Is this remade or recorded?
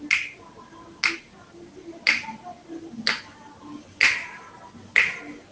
recorded